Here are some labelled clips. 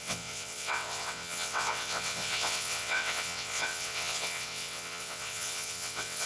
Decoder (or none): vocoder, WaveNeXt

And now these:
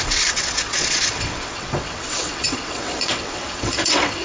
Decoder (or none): vocoder, WaveNeXt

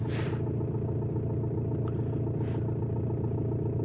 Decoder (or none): none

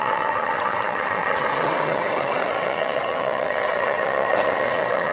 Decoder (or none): vocoder, WaveNeXt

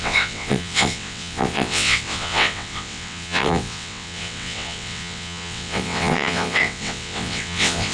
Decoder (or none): vocoder, WaveNeXt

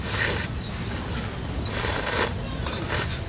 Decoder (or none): none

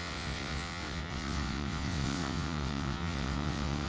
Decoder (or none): vocoder, WaveNeXt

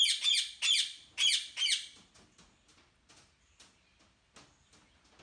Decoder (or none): none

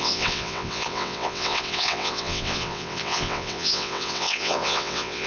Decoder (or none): vocoder, WaveNeXt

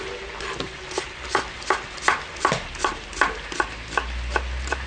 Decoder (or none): none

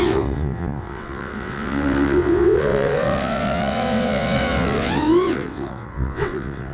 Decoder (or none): vocoder, WaveNeXt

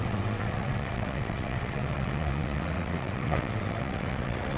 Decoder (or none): vocoder, WaveNeXt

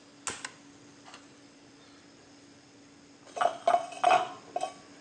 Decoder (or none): none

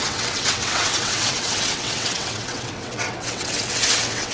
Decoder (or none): vocoder, WaveNeXt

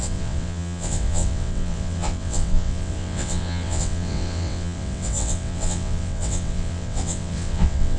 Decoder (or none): vocoder, WaveNeXt